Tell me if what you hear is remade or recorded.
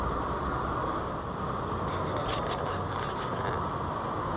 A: recorded